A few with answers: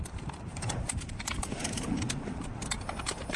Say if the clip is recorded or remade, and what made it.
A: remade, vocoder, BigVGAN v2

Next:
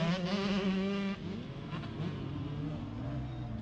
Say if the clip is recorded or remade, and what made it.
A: recorded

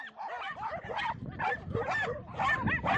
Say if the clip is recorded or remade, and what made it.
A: recorded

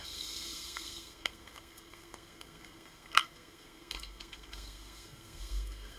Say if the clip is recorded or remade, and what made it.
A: remade, codec, SNAC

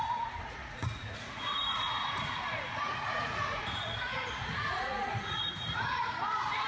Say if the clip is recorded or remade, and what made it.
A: remade, vocoder, Vocos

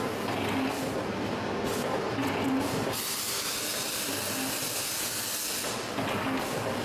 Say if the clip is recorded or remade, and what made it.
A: recorded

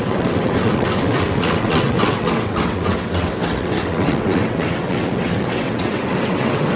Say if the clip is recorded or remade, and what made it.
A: remade, vocoder, WaveNeXt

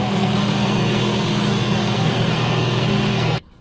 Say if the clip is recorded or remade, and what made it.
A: remade, codec, SNAC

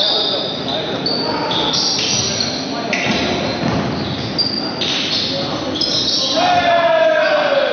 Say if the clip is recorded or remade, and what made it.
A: recorded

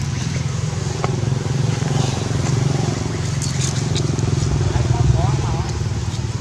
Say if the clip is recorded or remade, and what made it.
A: recorded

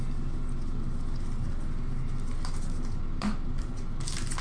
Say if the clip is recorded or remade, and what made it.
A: recorded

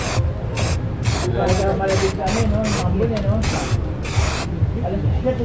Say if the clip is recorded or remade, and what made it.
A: recorded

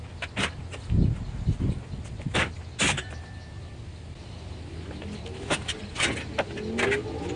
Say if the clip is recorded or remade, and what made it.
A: recorded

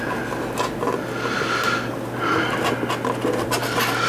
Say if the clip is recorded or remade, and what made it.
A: recorded